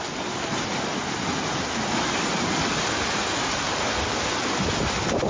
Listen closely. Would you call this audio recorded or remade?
recorded